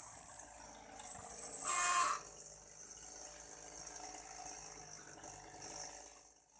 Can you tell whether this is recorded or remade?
recorded